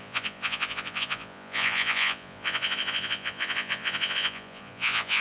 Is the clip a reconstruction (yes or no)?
yes